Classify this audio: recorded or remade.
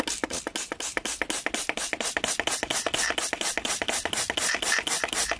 recorded